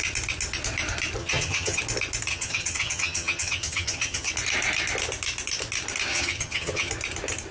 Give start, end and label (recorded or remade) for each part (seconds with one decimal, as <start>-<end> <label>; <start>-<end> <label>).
0.0-1.2 recorded; 1.2-1.8 remade; 1.8-2.3 recorded; 2.3-4.3 remade; 4.3-6.1 recorded; 6.1-6.9 remade; 6.9-7.5 recorded